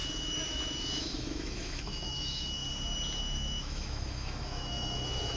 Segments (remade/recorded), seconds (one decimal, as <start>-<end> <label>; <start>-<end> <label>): 0.0-2.6 remade; 2.6-3.2 recorded; 3.2-5.4 remade